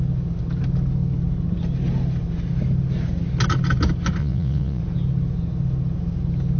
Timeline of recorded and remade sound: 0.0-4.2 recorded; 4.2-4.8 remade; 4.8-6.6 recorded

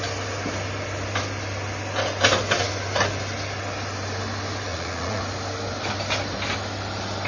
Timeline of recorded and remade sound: 0.0-4.7 recorded; 4.7-5.2 remade; 5.2-7.3 recorded

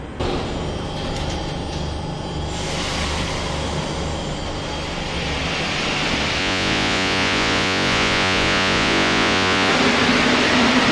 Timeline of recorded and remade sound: 0.0-6.4 recorded; 6.4-9.7 remade; 9.7-10.9 recorded

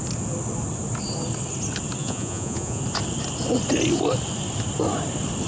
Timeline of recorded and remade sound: 0.0-2.0 recorded; 2.0-2.8 remade; 2.8-5.5 recorded

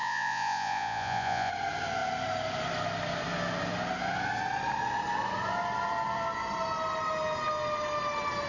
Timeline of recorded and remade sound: 0.0-1.5 remade; 1.5-8.5 recorded

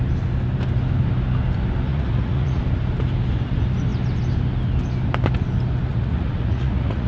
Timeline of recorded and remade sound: 0.0-1.9 recorded; 1.9-2.6 remade; 2.6-5.9 recorded; 5.9-7.1 remade

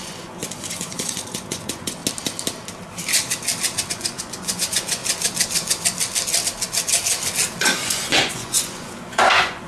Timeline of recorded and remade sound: 0.0-2.0 remade; 2.0-3.9 recorded; 3.9-5.0 remade; 5.0-7.6 recorded; 7.6-9.7 remade